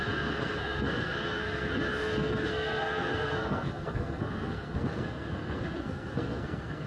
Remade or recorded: remade